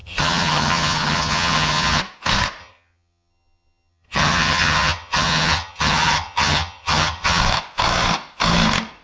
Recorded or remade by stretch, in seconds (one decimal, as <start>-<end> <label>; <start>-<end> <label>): 0.0-2.0 remade; 2.0-2.6 recorded; 2.6-7.4 remade; 7.4-9.0 recorded